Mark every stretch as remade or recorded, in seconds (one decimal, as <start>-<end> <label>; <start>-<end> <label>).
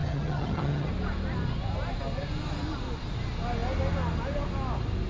0.0-0.9 remade; 0.9-5.1 recorded